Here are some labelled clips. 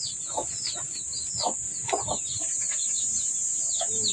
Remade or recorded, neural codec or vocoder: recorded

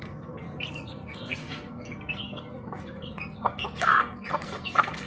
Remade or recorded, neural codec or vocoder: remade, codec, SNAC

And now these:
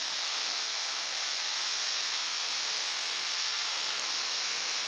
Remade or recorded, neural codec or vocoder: remade, codec, SNAC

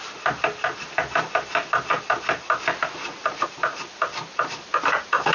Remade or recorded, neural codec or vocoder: recorded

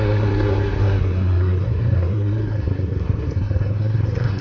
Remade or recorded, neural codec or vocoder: remade, codec, SNAC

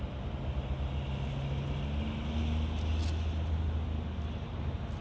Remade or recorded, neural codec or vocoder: recorded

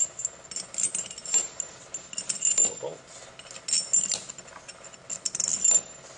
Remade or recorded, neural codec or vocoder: recorded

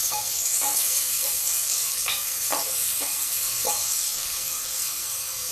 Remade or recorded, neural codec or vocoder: remade, codec, SNAC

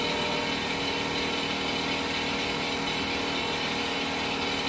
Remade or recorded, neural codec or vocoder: recorded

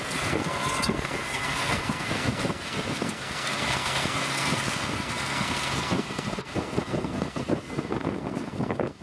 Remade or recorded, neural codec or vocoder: remade, codec, SNAC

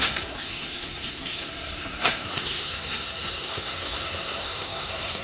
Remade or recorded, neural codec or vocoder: remade, codec, SNAC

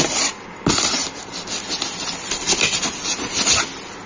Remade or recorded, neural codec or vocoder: recorded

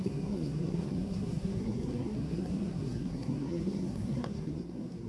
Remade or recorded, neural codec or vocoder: remade, codec, SNAC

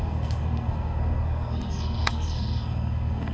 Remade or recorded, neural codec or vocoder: remade, codec, SNAC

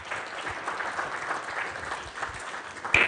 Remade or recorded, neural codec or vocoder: recorded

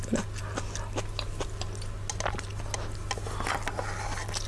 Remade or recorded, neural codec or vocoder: recorded